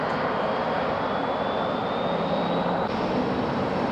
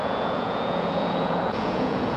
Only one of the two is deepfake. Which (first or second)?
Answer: second